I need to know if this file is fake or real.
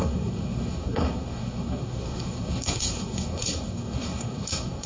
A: fake